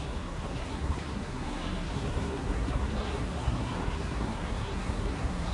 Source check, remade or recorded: remade